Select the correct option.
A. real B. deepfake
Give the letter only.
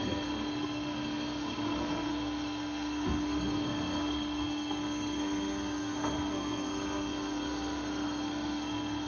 B